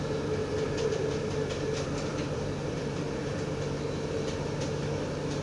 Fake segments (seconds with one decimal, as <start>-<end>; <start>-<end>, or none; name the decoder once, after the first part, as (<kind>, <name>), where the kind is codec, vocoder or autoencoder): 0.4-3.6 (vocoder, BigVGAN v2)